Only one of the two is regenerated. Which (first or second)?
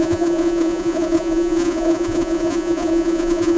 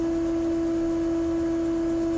first